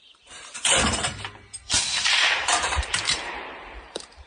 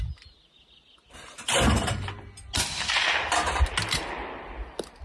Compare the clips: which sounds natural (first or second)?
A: second